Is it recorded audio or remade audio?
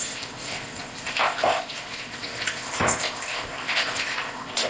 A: remade